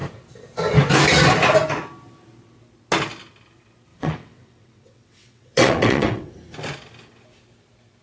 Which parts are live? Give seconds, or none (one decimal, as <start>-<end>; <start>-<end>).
0.0-3.9; 6.3-8.0